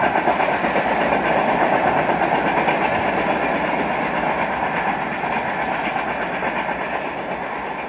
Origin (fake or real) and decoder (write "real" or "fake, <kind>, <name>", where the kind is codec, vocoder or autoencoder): real